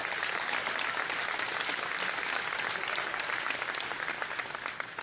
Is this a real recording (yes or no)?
yes